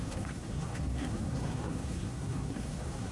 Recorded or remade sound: remade